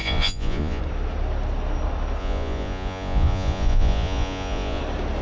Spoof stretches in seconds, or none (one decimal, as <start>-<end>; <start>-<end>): 0.0-0.8; 2.2-4.8